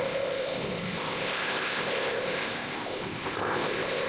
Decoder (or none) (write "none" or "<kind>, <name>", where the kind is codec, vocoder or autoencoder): codec, ZipCodec